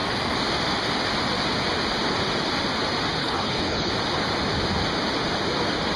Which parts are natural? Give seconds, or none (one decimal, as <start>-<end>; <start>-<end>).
0.0-3.2; 3.9-6.0